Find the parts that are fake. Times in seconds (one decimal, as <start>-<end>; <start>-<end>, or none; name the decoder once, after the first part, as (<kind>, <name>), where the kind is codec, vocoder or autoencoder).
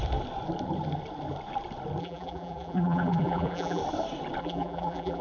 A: 2.0-3.8 (vocoder, BigVGAN v2); 4.4-5.2